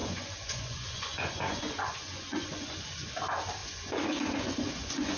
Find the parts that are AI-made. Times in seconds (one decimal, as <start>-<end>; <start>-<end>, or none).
0.0-3.1; 3.6-5.2